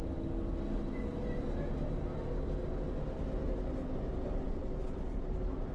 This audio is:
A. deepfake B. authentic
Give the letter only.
B